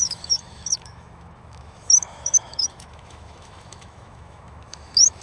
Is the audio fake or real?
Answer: fake